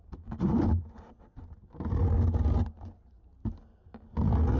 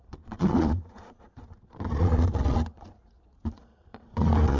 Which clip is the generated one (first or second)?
second